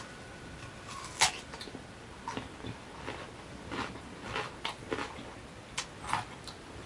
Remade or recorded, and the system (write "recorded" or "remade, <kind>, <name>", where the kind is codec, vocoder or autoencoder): recorded